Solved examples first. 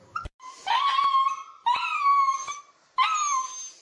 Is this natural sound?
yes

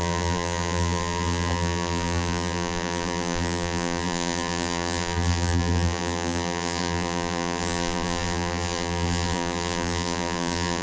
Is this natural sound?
no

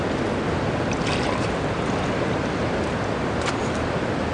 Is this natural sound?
no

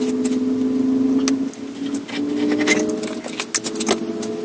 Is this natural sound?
yes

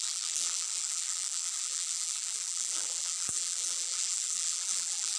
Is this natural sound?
no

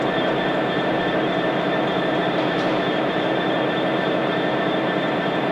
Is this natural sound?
no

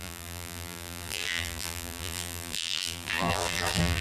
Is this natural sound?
no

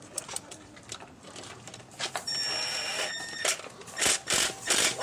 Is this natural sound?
no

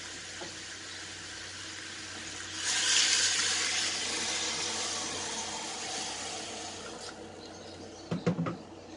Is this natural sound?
yes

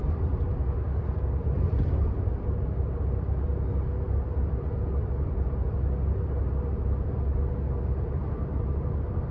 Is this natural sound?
yes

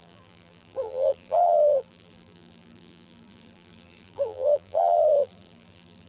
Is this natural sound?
no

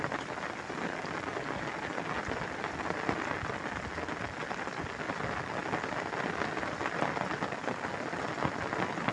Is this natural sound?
yes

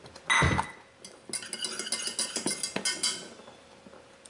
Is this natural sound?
yes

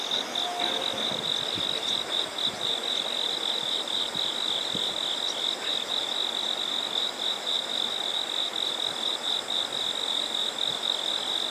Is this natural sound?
yes